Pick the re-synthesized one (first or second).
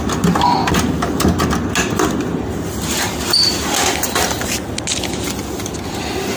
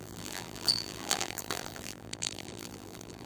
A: second